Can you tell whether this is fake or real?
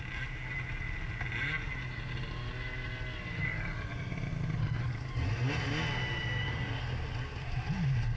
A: real